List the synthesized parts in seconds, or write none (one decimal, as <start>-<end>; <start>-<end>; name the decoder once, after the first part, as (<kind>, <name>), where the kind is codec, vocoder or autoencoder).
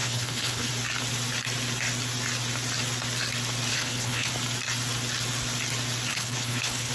0.0-0.7 (codec, HILCodec); 3.7-4.3; 6.1-6.9